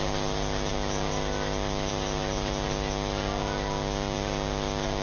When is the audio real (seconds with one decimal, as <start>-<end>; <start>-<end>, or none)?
0.0-5.0